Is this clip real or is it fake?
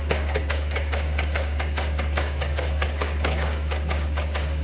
fake